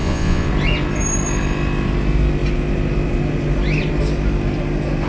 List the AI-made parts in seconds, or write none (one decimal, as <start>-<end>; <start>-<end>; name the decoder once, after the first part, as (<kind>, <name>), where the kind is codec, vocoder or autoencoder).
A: 0.0-0.5 (vocoder, Vocos)